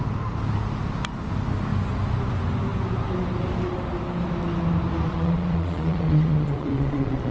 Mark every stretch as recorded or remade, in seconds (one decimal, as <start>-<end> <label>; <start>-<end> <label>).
0.0-5.1 recorded; 5.1-7.3 remade